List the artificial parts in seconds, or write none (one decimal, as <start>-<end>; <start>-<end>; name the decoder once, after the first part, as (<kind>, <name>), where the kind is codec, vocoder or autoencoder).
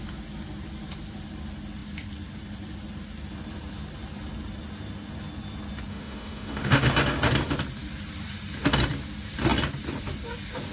5.9-6.9 (autoencoder, DAC-VAE)